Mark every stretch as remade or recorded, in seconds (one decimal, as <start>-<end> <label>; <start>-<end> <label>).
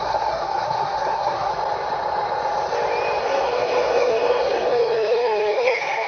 0.0-1.5 remade; 1.5-3.2 recorded; 3.2-6.1 remade